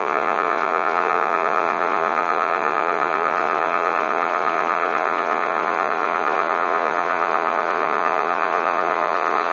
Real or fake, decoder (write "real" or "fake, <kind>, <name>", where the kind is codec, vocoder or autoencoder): fake, vocoder, Vocos